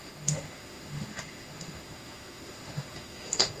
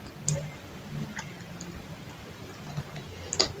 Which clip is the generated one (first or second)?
first